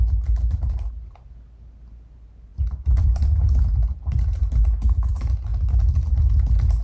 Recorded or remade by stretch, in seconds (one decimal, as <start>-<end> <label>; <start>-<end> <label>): 0.0-2.5 recorded; 2.5-3.2 remade; 3.2-6.8 recorded